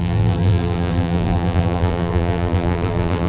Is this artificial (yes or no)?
yes